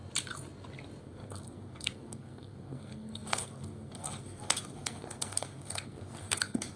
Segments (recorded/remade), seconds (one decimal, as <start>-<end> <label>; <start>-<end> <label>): 0.0-1.0 recorded; 1.0-6.8 remade